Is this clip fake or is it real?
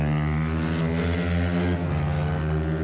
real